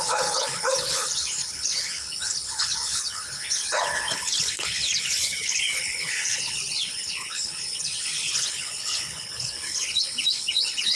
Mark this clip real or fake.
fake